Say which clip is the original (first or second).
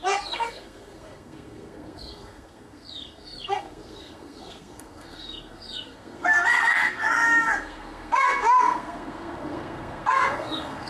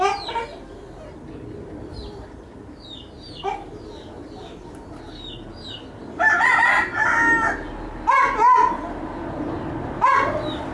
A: second